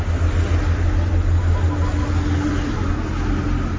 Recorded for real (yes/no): yes